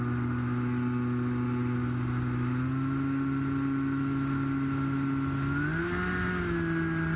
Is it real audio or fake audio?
real